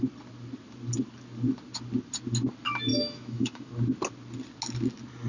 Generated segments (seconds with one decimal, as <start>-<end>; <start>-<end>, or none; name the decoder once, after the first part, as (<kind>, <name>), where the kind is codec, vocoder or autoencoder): 2.9-3.7 (autoencoder, DAC-VAE)